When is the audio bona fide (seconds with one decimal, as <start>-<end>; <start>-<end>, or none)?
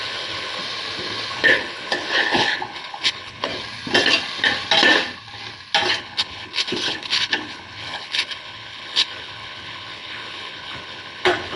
0.6-1.3; 3.5-6.0